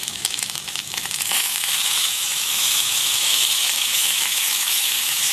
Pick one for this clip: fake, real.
fake